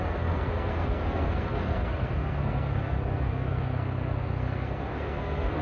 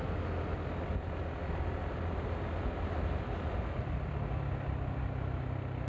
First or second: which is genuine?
second